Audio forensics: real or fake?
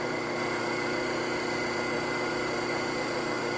fake